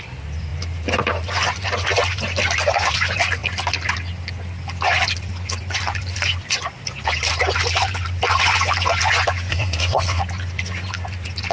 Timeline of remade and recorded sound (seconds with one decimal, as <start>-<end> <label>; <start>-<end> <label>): 0.0-9.5 recorded; 9.5-10.2 remade; 10.2-11.5 recorded